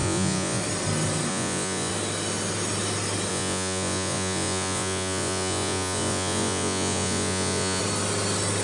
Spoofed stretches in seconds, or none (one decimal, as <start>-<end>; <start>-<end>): 0.0-0.6; 1.3-1.9; 3.3-7.8